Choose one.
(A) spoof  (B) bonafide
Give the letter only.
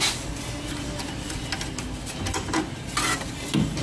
B